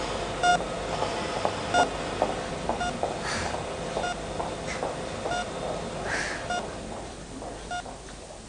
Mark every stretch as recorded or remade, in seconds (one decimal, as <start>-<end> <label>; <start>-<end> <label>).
0.0-8.5 recorded